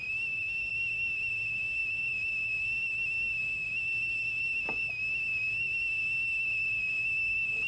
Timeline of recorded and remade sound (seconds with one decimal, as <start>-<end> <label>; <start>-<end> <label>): 0.0-7.7 recorded